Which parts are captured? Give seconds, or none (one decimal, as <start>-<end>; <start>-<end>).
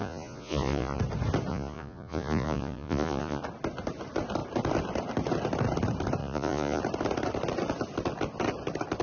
1.0-1.5; 3.4-6.2; 6.8-9.0